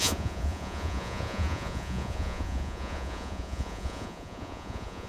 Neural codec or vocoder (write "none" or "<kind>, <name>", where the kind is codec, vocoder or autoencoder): vocoder, Vocos